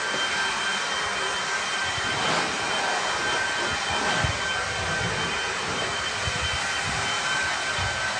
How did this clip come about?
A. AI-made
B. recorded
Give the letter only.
B